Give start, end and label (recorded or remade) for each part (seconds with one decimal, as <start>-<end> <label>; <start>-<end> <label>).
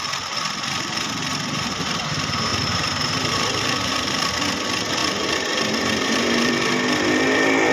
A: 0.0-1.3 recorded; 1.3-2.0 remade; 2.0-2.5 recorded; 2.5-4.3 remade; 4.3-5.0 recorded; 5.0-6.5 remade; 6.5-7.7 recorded